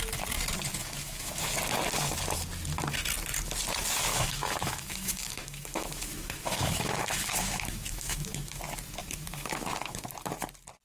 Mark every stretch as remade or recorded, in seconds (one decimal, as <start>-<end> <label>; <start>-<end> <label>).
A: 0.0-0.8 recorded; 0.8-1.4 remade; 1.4-4.1 recorded; 4.1-8.6 remade; 8.6-9.0 recorded; 9.0-10.1 remade; 10.1-10.8 recorded